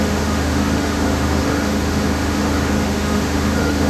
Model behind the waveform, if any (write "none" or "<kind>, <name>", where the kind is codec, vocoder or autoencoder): autoencoder, DAC-VAE